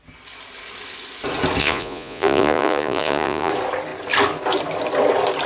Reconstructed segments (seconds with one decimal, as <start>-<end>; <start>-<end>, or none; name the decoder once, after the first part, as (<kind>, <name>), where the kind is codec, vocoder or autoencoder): 1.6-3.5 (vocoder, Vocos)